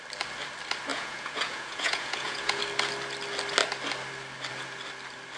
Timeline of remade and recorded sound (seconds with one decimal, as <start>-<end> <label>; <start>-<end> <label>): 0.0-0.9 recorded; 0.9-2.6 remade; 2.6-5.4 recorded